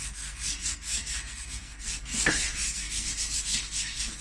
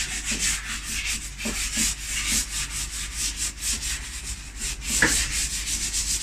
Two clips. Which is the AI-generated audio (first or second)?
first